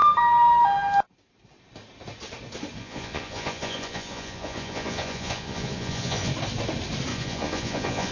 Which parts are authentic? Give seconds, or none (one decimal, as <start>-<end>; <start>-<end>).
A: 0.0-2.8; 6.3-7.1

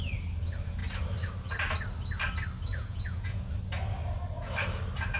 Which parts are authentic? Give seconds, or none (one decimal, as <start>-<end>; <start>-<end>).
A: 0.0-2.7; 3.5-5.2